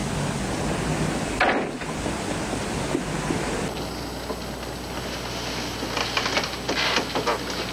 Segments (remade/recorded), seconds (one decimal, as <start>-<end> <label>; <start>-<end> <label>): 0.0-7.7 recorded